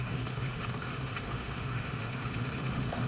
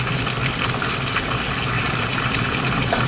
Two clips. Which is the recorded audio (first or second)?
second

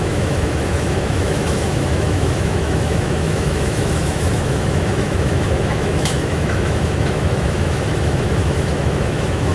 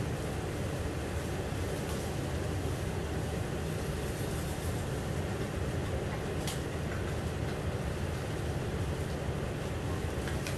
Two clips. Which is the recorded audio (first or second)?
second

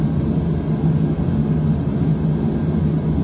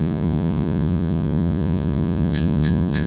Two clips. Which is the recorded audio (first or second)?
first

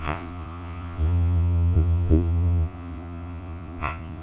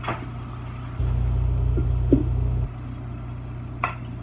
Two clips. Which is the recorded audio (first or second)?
second